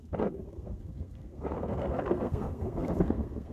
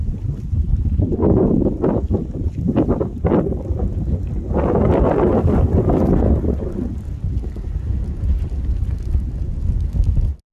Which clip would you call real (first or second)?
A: second